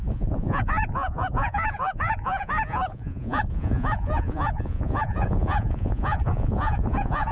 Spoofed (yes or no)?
yes